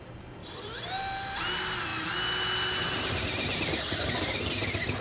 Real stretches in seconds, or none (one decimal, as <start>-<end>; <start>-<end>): 0.0-0.4; 1.4-1.9; 4.5-5.0

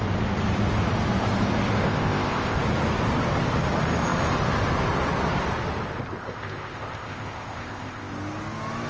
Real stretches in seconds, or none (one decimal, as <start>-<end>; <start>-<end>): 0.0-1.8; 2.6-6.2; 8.1-8.9